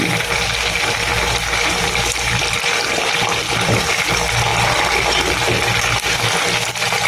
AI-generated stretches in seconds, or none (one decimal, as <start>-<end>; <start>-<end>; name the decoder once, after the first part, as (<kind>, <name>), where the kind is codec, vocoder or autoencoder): 1.1-4.1 (vocoder, BigVGAN v2)